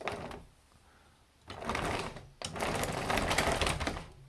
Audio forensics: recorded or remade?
recorded